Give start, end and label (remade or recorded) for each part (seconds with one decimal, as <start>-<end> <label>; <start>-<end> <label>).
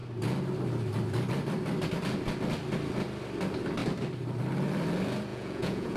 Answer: 0.0-5.3 recorded; 5.3-6.0 remade